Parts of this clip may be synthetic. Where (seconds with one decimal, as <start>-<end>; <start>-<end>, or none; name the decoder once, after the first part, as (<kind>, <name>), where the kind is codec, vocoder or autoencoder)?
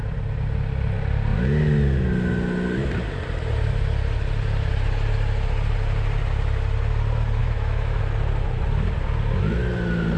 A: 7.4-8.0 (autoencoder, DAC-VAE)